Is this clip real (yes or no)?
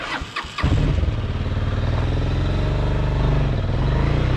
yes